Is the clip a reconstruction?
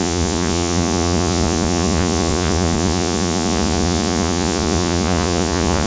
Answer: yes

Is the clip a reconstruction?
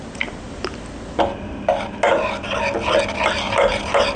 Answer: no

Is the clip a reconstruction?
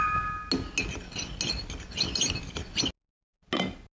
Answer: no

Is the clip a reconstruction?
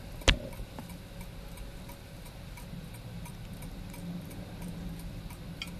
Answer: no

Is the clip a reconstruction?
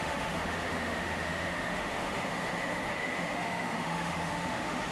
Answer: yes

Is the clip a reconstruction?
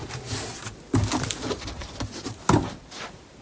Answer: no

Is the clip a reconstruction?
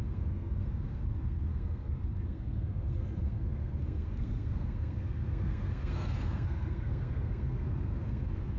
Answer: yes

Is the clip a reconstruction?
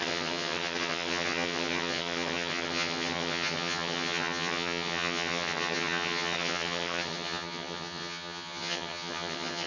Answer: yes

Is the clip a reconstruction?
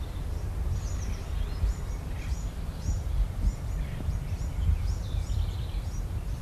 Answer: no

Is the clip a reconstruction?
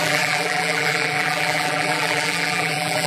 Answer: yes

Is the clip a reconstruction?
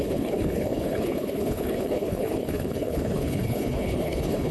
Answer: yes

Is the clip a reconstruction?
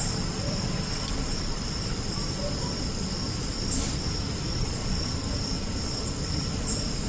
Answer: yes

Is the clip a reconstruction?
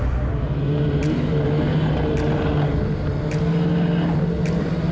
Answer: no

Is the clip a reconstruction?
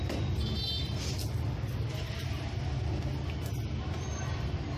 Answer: no